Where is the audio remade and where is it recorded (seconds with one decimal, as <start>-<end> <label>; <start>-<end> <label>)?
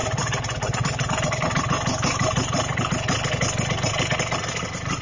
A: 0.0-2.9 remade; 2.9-5.0 recorded